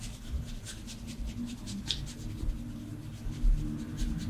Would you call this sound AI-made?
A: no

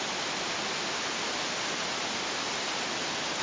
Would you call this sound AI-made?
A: no